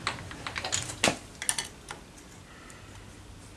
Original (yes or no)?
yes